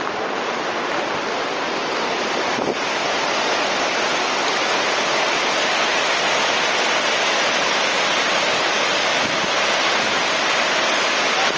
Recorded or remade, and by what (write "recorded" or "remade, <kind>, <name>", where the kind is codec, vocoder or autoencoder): recorded